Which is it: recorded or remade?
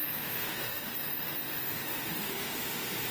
remade